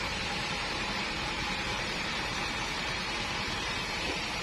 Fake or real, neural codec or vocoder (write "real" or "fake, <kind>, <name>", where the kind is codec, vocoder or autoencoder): fake, vocoder, BigVGAN v2